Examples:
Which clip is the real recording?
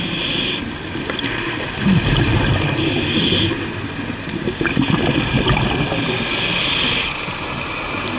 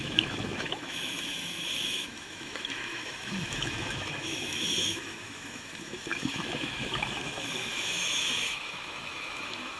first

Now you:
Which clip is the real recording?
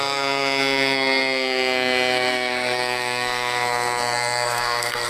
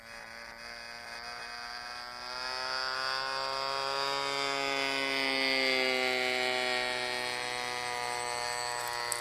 second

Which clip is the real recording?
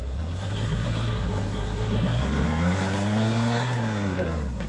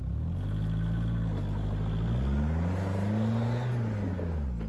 second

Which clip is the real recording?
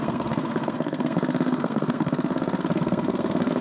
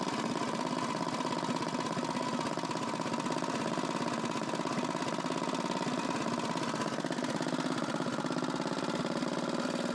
second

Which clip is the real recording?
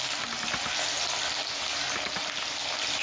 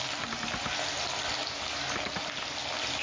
first